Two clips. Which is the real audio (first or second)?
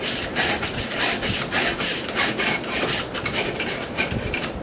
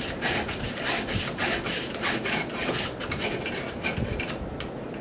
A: second